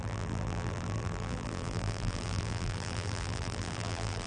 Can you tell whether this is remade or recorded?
remade